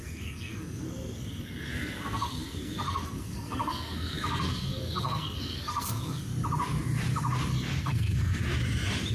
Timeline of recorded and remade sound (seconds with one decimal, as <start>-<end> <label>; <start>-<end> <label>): 0.0-6.3 remade; 6.3-7.8 recorded; 7.8-8.4 remade; 8.4-9.1 recorded